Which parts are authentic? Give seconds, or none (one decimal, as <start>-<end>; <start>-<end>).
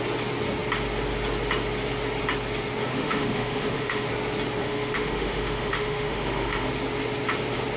0.0-2.9; 4.1-4.6; 6.7-7.8